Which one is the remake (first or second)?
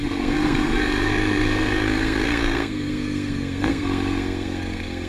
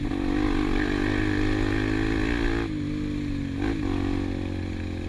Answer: first